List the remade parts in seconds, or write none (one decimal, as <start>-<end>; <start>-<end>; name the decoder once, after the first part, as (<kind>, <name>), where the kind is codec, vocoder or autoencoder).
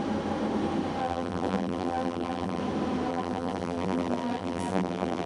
1.0-2.6 (vocoder, BigVGAN v2); 3.1-5.3